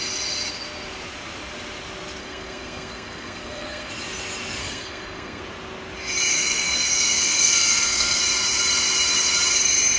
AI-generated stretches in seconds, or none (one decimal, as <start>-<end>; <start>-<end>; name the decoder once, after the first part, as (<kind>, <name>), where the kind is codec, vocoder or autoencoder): 2.2-3.9 (codec, SNAC); 4.6-5.4; 6.3-8.2